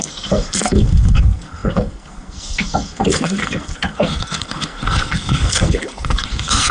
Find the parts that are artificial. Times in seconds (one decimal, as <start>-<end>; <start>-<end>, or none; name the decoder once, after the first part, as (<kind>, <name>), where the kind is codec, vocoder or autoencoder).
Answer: 0.0-6.7 (codec, SNAC)